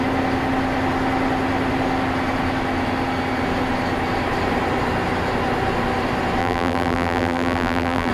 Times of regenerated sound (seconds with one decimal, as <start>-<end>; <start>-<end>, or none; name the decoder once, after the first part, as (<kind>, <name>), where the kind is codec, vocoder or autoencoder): 6.4-8.1 (vocoder, BigVGAN v2)